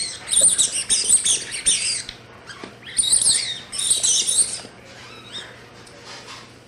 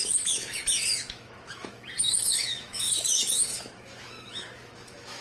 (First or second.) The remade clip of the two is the second